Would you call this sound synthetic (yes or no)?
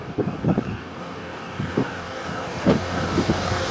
yes